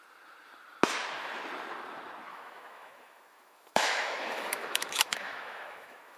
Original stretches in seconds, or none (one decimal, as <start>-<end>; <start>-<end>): 0.0-2.3